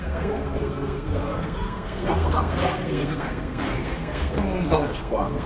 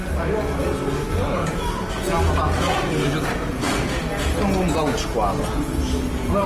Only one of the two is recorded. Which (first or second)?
second